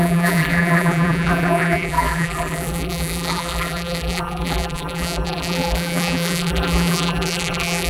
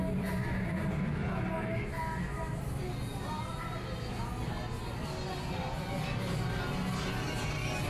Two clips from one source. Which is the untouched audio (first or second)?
second